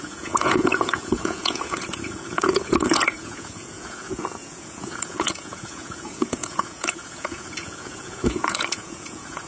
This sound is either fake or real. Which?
fake